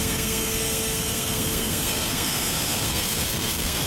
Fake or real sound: fake